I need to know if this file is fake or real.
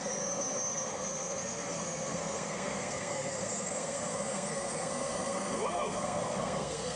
fake